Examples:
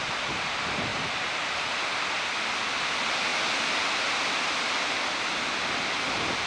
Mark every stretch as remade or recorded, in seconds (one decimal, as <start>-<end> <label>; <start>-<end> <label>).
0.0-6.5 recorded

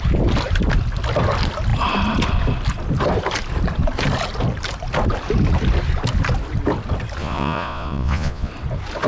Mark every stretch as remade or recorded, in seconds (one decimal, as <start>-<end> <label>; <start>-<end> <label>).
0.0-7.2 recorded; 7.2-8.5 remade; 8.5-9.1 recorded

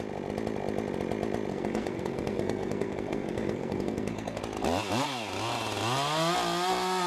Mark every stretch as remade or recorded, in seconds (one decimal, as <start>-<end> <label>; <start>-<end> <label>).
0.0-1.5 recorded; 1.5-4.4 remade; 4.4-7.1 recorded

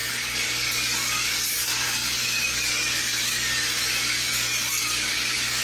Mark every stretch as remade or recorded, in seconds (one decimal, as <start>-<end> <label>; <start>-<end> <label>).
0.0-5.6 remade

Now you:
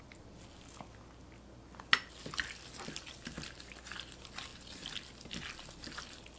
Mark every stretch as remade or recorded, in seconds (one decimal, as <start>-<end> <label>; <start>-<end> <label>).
0.0-6.4 recorded

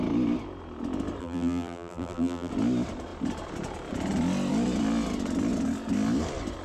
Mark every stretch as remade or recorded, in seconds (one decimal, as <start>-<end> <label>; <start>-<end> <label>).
0.0-1.2 recorded; 1.2-2.5 remade; 2.5-6.6 recorded

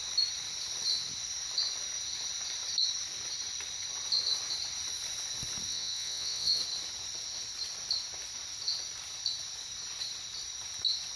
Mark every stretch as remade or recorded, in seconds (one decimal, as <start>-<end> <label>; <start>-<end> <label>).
0.0-5.7 recorded; 5.7-6.6 remade; 6.6-11.2 recorded

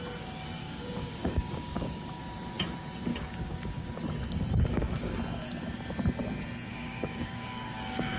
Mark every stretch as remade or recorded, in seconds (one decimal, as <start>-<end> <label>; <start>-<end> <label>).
0.0-0.6 recorded; 0.6-2.2 remade; 2.2-3.1 recorded; 3.1-3.9 remade; 3.9-4.7 recorded; 4.7-5.2 remade; 5.2-6.7 recorded; 6.7-8.2 remade